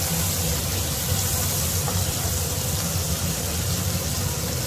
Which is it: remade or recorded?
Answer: recorded